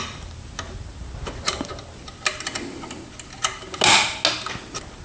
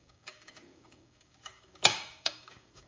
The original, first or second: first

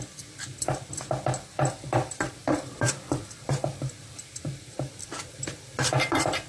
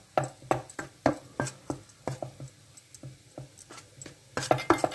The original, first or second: second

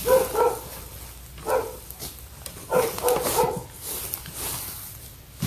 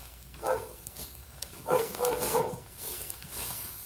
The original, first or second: first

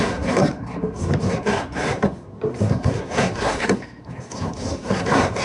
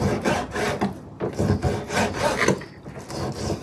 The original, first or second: second